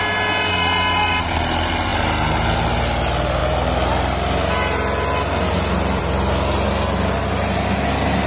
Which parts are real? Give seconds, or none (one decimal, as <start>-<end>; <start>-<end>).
0.0-8.3